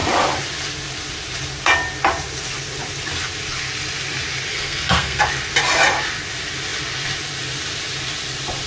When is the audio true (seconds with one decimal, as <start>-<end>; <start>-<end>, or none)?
0.0-4.5; 5.2-8.7

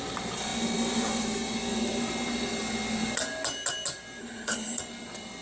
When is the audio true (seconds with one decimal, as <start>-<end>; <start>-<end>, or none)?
0.0-4.2; 4.8-5.4

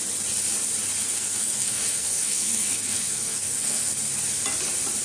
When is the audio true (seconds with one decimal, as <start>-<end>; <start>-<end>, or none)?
0.0-1.0; 3.9-5.0